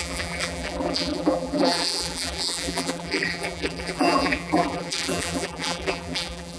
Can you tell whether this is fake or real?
fake